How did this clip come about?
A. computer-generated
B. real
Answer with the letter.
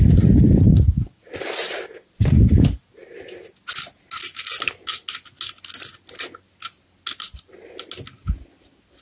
B